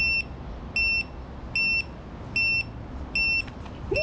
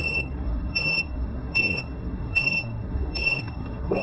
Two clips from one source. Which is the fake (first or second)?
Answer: second